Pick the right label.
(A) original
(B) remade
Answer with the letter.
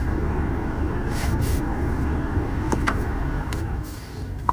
B